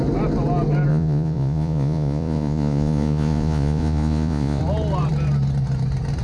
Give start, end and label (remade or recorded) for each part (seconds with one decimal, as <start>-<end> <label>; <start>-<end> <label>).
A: 0.0-0.9 recorded; 0.9-4.6 remade; 4.6-6.2 recorded